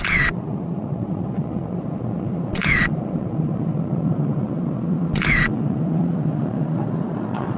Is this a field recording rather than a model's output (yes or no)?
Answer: no